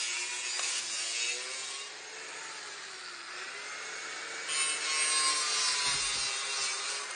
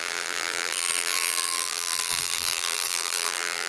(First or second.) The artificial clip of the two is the second